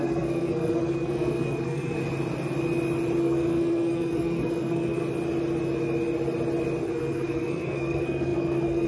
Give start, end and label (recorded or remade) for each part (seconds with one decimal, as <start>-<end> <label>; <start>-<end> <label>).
0.0-2.0 remade; 2.0-3.2 recorded; 3.2-5.0 remade; 5.0-6.8 recorded; 6.8-8.9 remade

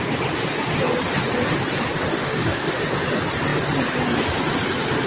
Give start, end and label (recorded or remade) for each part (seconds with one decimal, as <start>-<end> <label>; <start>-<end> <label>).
0.0-2.1 recorded; 2.1-2.8 remade; 2.8-5.1 recorded

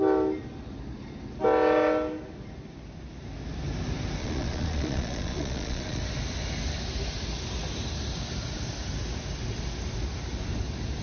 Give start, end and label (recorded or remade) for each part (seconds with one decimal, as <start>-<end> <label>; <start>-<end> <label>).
0.0-4.2 recorded; 4.2-6.0 remade; 6.0-11.0 recorded

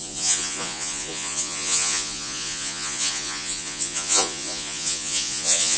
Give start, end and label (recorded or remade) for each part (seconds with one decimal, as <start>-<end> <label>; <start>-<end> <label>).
0.0-5.8 remade